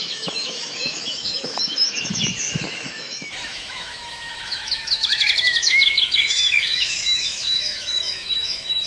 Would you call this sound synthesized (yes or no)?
yes